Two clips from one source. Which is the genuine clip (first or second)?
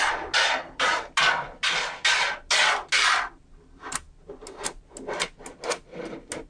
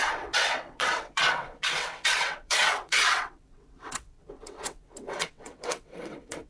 first